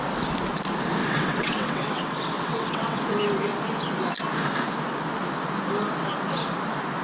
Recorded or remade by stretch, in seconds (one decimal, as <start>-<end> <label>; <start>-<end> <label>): 0.0-1.0 recorded; 1.0-3.0 remade; 3.0-7.0 recorded